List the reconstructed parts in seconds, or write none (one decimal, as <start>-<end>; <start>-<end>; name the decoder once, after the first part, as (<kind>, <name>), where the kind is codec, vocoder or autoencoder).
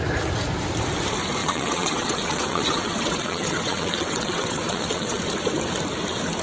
1.4-5.2 (vocoder, WaveNeXt)